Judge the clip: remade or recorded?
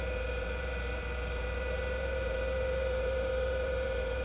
remade